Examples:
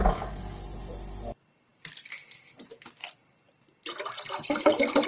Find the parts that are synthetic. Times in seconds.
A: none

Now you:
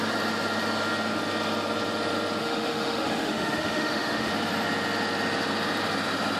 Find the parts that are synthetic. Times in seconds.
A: 2.4-4.3

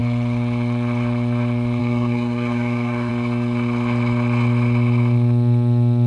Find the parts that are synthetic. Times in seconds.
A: 1.8-3.1

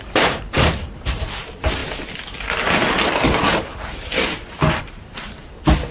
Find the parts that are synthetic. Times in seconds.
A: 0.0-1.8; 4.8-5.9

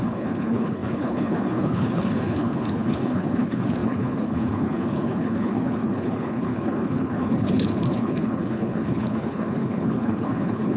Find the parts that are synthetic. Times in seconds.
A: 0.0-10.8